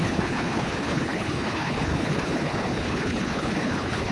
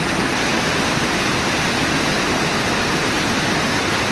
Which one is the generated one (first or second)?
first